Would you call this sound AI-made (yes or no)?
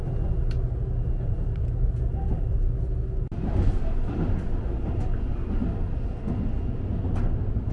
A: no